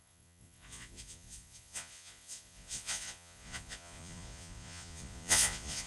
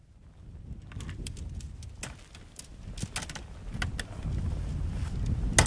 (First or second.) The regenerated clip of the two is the first